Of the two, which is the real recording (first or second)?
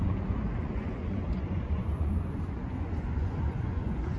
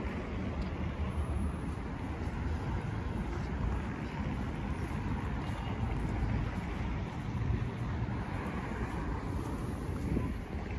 second